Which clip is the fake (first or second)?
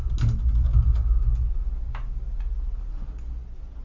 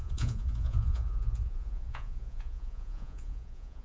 second